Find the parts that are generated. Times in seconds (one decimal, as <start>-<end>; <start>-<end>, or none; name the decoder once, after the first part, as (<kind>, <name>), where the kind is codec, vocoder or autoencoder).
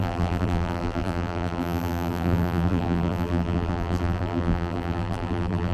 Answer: 0.0-5.7 (vocoder, BigVGAN v2)